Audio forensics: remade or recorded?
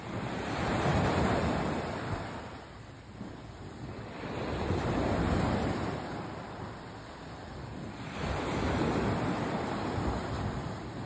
remade